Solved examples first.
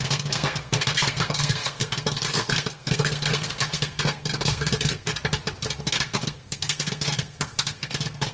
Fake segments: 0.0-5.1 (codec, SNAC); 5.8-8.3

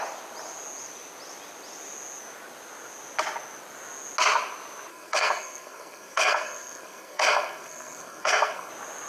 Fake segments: 4.9-8.7 (codec, SNAC)